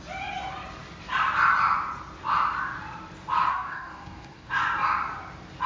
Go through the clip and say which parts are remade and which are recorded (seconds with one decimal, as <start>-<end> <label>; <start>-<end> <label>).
0.0-3.5 recorded; 3.5-4.5 remade; 4.5-5.7 recorded